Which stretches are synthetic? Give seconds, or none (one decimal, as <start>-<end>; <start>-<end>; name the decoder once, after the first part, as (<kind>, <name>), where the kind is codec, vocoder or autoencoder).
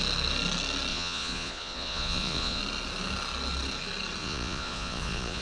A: 0.9-2.6 (vocoder, Vocos); 4.2-5.4